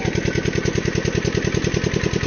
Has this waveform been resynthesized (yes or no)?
no